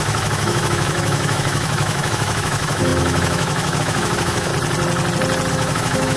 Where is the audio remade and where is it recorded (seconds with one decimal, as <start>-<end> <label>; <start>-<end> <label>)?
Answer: 0.0-4.5 remade; 4.5-5.5 recorded; 5.5-6.2 remade